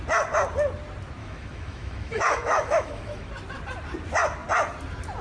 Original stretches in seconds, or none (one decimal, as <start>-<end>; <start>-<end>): 0.0-1.2; 3.3-5.2

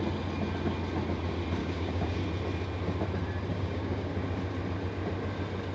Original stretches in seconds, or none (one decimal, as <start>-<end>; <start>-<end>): 0.0-1.6; 2.2-3.5; 4.1-5.7

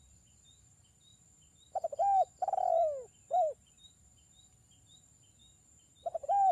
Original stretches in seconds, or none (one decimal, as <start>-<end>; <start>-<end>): 0.0-6.5

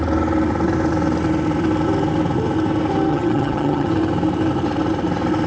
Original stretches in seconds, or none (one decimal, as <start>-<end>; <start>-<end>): 0.0-3.1; 3.9-5.5

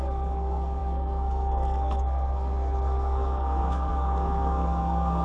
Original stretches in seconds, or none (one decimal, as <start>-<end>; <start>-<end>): none

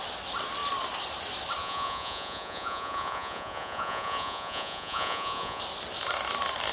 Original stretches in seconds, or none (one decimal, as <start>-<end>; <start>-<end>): 0.0-1.6; 5.6-6.7